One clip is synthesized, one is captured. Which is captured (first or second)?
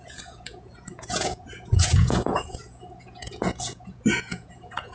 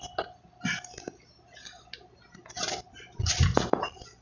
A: second